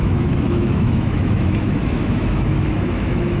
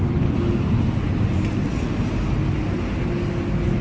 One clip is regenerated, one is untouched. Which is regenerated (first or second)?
first